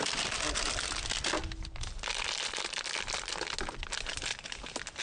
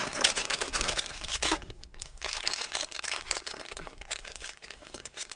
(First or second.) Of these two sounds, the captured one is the first